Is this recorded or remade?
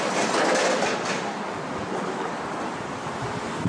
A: recorded